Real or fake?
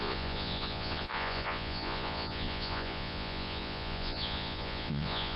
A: fake